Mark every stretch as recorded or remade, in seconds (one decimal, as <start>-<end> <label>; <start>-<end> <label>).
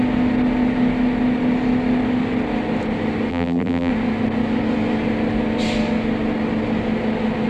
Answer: 0.0-3.3 recorded; 3.3-3.9 remade; 3.9-7.5 recorded